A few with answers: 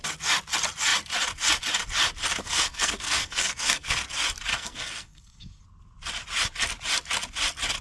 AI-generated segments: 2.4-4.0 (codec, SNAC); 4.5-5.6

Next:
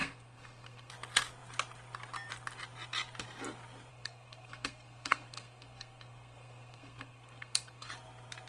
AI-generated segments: 0.0-0.9 (codec, SNAC); 3.9-7.9

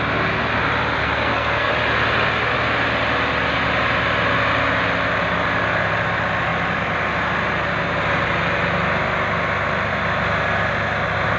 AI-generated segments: 1.0-1.7 (codec, SNAC)

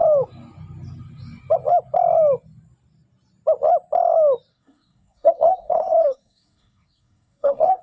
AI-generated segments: 4.5-7.8 (codec, SNAC)